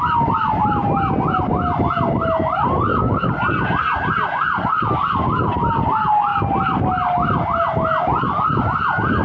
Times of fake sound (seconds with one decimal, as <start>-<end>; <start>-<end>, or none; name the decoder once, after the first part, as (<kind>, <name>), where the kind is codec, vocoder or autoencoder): none